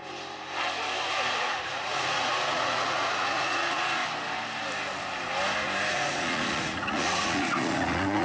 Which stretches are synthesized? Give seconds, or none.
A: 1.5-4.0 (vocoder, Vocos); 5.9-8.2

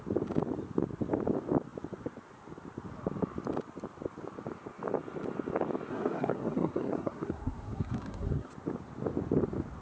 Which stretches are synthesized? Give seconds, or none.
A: 5.9-8.5 (codec, SNAC)

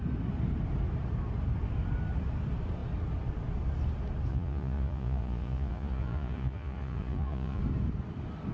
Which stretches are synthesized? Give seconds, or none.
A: 4.3-7.6 (vocoder, Vocos)

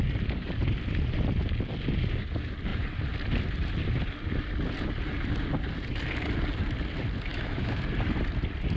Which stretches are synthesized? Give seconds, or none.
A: 7.3-7.8 (autoencoder, DAC-VAE)